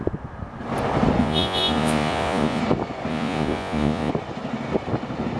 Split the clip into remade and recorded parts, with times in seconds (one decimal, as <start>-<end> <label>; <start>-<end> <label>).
0.0-1.2 recorded; 1.2-2.6 remade; 2.6-3.1 recorded; 3.1-4.1 remade; 4.1-5.4 recorded